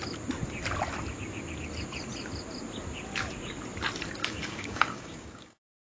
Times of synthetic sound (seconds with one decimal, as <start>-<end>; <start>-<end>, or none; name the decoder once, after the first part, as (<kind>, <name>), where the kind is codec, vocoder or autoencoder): 4.2-5.9 (codec, DAC)